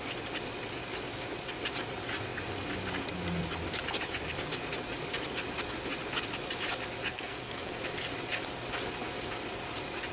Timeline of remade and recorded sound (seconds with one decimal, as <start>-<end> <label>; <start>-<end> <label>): 0.0-7.1 recorded; 7.1-7.8 remade; 7.8-10.1 recorded